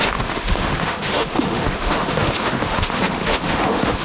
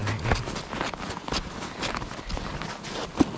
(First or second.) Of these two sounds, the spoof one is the first